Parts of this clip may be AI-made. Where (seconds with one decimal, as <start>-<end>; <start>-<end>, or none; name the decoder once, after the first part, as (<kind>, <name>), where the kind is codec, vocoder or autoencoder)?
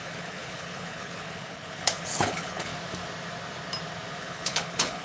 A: 0.0-2.7 (codec, HILCodec); 4.2-5.0